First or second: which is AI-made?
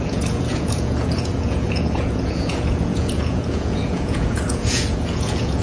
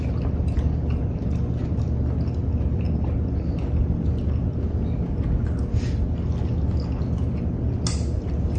first